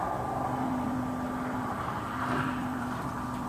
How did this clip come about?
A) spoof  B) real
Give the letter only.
A